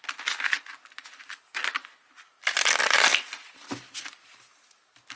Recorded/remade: recorded